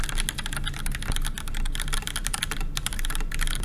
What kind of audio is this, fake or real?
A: real